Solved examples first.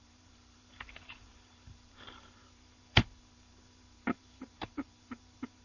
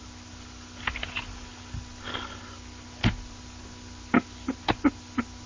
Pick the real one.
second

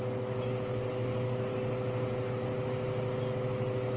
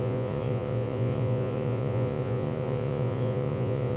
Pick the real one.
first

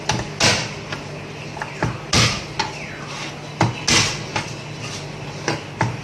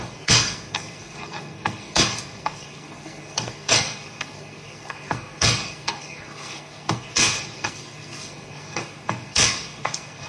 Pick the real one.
first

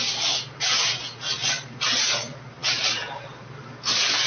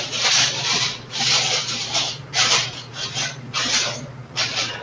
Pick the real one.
first